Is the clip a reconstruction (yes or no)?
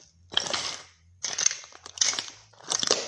no